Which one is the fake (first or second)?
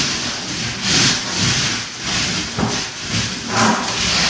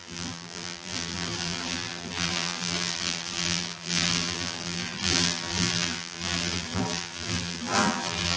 second